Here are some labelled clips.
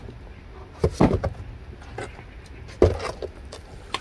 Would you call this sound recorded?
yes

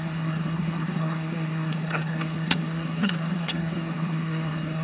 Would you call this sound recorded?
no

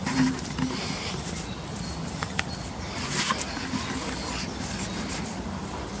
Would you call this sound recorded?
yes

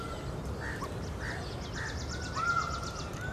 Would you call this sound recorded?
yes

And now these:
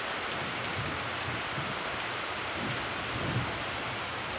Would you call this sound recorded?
yes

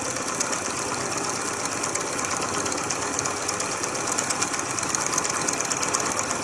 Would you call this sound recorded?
yes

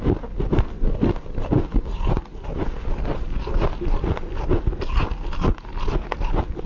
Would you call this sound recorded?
yes